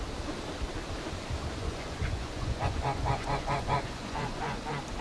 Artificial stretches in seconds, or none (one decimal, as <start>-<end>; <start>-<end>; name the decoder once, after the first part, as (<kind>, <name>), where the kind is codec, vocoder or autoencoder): 1.6-4.6 (vocoder, Vocos)